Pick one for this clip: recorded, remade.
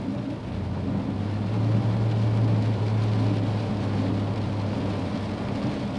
recorded